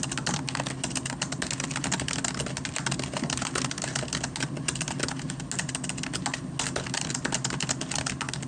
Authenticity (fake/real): real